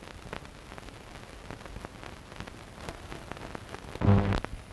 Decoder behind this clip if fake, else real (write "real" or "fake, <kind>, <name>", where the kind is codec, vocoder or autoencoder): real